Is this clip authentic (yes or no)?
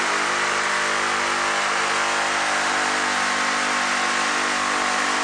yes